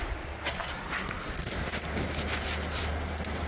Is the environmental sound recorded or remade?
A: recorded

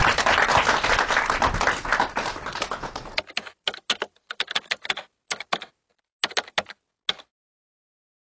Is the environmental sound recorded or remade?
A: recorded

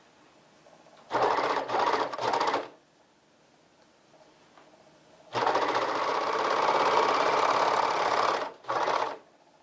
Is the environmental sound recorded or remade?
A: recorded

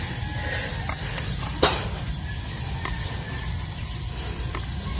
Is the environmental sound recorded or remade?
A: recorded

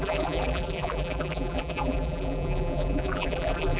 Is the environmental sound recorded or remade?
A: remade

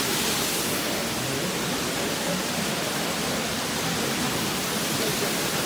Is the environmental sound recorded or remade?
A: recorded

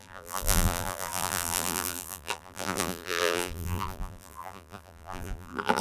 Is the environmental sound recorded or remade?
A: remade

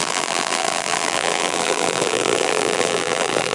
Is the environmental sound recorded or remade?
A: remade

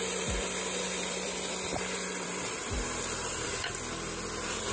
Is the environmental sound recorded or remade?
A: remade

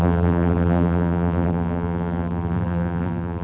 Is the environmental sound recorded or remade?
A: remade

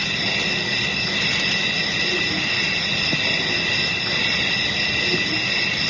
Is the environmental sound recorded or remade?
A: recorded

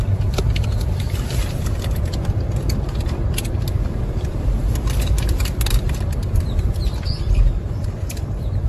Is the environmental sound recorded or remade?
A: remade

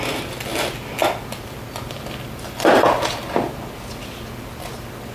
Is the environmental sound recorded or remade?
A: recorded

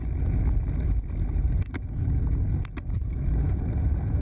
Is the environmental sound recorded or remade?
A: recorded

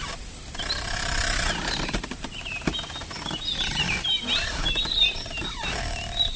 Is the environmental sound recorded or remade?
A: remade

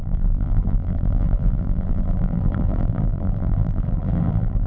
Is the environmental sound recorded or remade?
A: remade